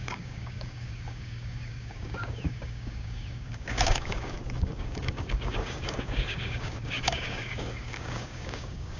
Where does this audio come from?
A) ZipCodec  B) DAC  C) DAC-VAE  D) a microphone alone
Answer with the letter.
B